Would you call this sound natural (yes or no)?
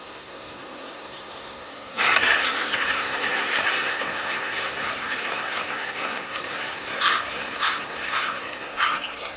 no